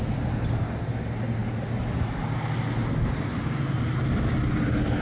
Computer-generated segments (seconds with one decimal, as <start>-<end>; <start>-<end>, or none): none